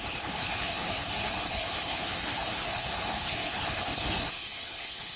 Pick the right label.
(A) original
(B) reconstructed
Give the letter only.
B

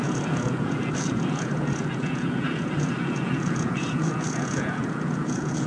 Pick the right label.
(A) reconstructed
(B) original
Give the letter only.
A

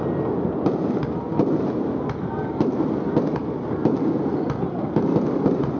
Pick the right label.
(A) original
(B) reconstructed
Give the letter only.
A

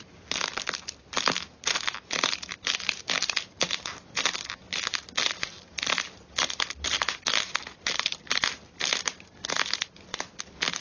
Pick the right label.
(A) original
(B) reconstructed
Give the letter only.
A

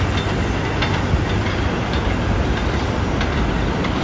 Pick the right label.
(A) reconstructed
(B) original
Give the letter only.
B